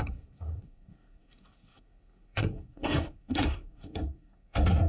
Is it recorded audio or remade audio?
remade